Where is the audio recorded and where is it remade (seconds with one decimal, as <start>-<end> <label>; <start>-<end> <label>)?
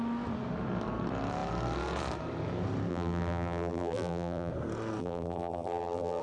0.0-2.9 recorded; 2.9-4.5 remade; 4.5-5.0 recorded; 5.0-6.2 remade